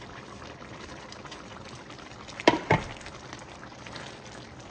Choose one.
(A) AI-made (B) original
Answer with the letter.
A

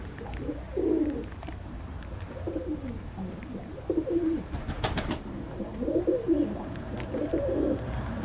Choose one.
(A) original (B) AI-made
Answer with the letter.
B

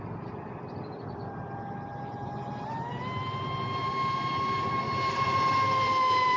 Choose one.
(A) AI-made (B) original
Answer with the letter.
B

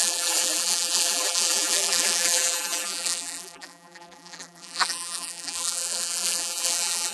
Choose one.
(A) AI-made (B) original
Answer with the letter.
A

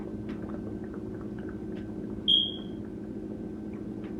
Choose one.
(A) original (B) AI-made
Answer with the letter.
A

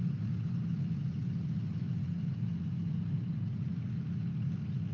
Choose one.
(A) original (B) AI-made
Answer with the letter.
A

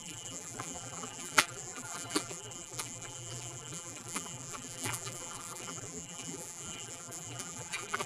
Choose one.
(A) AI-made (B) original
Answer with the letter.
A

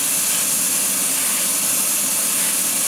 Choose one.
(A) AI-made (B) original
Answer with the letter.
B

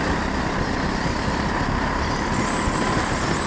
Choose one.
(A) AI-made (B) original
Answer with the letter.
B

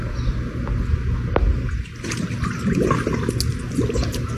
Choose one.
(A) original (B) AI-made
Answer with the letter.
A